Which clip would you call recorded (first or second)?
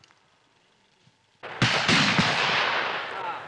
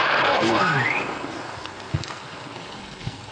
first